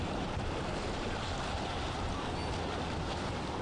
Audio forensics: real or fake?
real